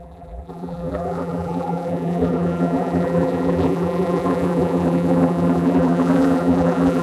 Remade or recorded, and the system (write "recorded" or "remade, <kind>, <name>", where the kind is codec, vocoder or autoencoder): remade, vocoder, BigVGAN v2